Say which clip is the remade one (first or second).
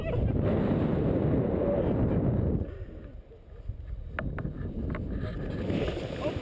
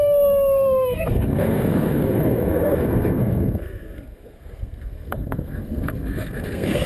second